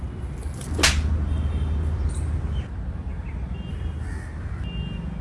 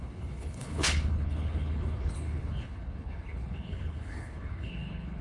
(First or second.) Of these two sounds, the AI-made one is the second